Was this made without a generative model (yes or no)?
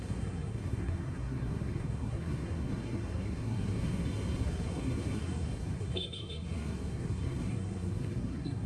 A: no